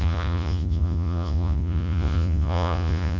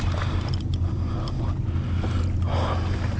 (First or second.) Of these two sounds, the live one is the second